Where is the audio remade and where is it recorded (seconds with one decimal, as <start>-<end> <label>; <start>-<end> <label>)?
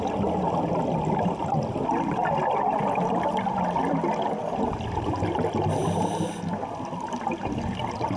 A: 0.0-8.2 recorded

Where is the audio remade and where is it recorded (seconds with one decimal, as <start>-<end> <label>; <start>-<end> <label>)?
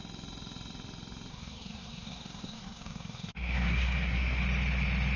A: 0.0-1.3 recorded; 1.3-4.4 remade; 4.4-5.2 recorded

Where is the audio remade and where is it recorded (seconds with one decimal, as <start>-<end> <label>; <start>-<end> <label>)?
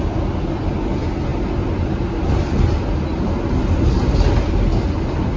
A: 0.0-5.4 recorded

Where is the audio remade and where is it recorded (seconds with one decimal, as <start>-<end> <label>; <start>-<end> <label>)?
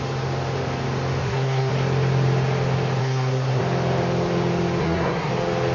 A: 0.0-1.2 recorded; 1.2-1.7 remade; 1.7-3.0 recorded; 3.0-3.6 remade; 3.6-4.8 recorded; 4.8-5.3 remade; 5.3-5.7 recorded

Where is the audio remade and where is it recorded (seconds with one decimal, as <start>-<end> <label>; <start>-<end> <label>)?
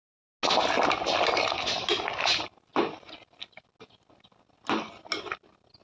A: 0.0-5.8 recorded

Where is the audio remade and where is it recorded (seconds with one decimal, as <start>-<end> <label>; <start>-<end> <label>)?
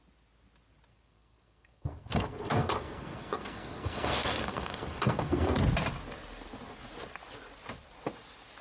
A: 0.0-0.9 recorded; 0.9-5.6 remade; 5.6-8.6 recorded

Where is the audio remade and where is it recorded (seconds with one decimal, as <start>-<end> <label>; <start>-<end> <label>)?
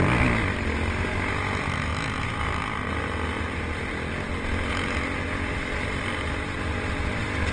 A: 0.0-7.5 recorded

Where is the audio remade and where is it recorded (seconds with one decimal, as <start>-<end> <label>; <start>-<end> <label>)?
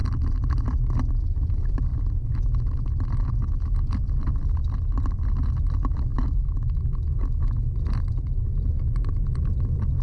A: 0.0-6.1 recorded; 6.1-7.8 remade; 7.8-10.0 recorded